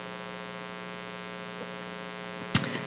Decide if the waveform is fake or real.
real